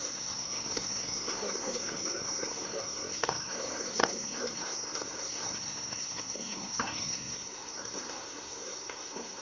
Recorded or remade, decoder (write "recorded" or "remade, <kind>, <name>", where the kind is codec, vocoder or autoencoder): remade, codec, SNAC